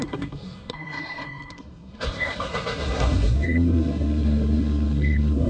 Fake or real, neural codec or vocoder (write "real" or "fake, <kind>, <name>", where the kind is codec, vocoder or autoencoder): fake, codec, SNAC